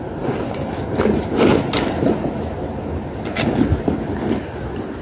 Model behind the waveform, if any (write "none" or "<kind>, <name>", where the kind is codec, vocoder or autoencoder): none